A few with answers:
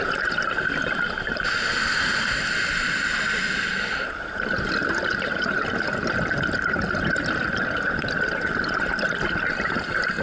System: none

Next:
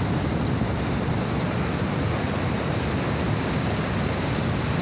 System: none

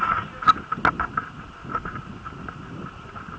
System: none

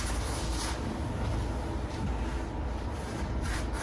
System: none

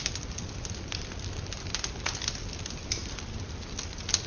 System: none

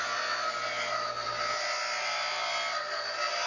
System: none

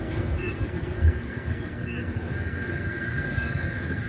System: codec, SNAC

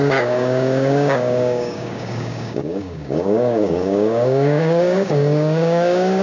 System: codec, DAC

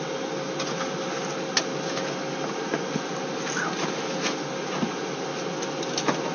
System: none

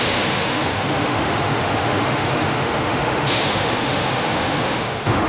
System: autoencoder, DAC-VAE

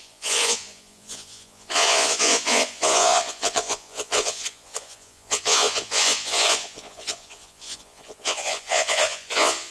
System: vocoder, Vocos